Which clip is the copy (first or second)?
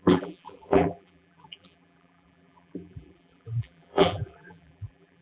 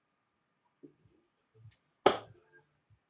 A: first